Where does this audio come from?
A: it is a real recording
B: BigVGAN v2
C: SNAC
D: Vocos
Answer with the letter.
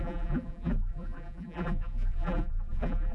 B